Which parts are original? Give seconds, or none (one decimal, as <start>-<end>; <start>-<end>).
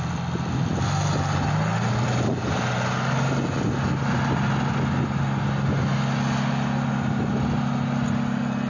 0.0-8.7